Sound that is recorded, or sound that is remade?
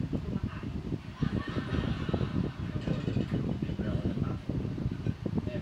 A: recorded